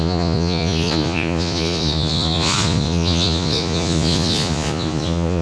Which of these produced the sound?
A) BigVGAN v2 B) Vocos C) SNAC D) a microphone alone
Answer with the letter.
B